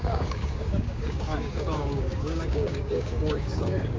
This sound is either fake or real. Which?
fake